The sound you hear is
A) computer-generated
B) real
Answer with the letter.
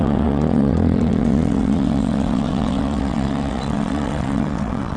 A